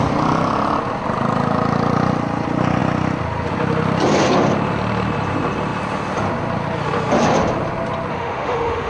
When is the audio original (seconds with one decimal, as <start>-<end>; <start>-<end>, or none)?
0.0-8.1